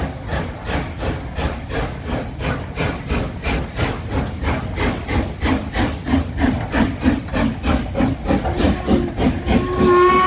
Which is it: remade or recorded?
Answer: recorded